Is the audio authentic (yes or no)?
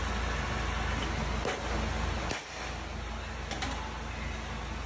yes